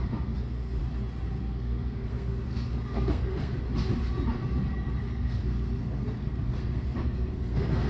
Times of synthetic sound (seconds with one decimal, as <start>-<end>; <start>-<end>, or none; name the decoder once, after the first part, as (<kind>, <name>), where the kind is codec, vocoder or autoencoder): 0.0-0.8 (codec, SNAC); 1.4-3.5; 5.0-7.9